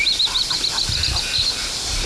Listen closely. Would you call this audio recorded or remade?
recorded